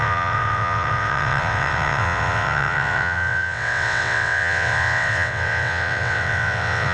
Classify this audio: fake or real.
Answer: fake